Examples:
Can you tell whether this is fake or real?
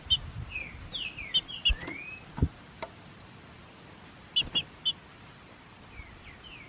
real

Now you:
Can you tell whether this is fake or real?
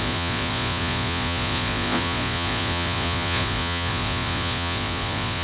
fake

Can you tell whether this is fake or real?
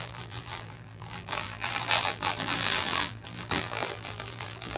fake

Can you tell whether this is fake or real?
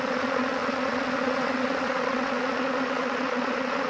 fake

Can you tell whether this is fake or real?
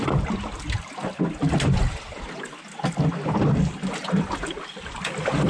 real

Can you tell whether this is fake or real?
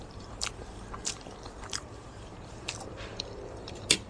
fake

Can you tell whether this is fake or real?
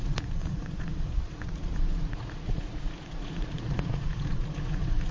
fake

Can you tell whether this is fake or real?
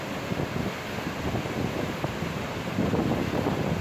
real